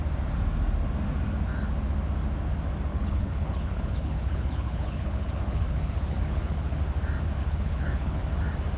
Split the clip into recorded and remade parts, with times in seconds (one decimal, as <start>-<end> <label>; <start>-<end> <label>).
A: 0.0-2.9 recorded; 2.9-6.8 remade; 6.8-7.4 recorded; 7.4-8.2 remade; 8.2-8.8 recorded